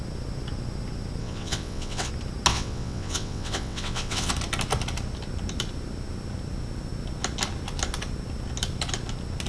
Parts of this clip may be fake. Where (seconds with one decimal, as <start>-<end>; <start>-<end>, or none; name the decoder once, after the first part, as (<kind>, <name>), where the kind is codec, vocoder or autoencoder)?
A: 1.2-2.1 (vocoder, WaveNeXt); 2.5-4.3